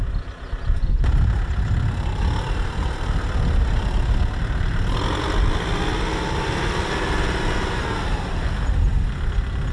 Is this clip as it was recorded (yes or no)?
yes